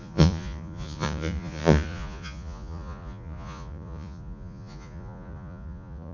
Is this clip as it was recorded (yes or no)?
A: no